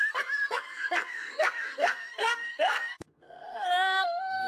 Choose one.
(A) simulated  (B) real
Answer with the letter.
A